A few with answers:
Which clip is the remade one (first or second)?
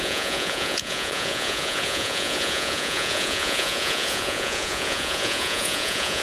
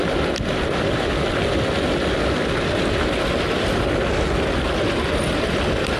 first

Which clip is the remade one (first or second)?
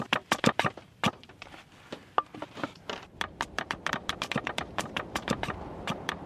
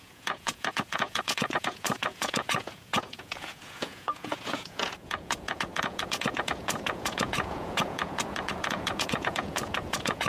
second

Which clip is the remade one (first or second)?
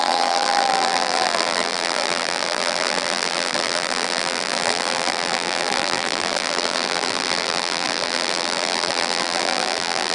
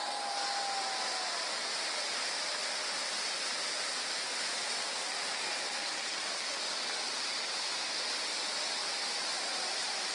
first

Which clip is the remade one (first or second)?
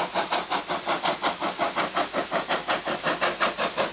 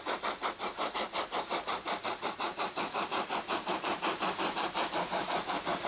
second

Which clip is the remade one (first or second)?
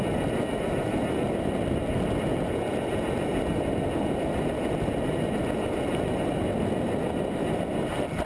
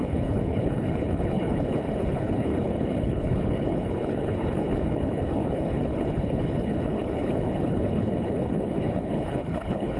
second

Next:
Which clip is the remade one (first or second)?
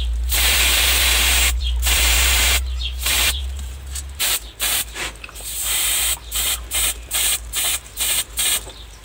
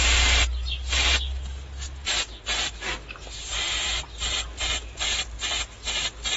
first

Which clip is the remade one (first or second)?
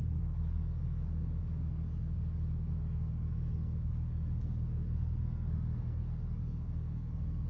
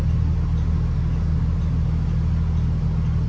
first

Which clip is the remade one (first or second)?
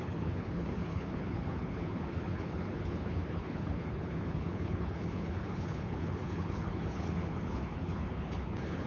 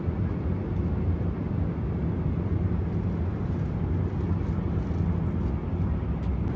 first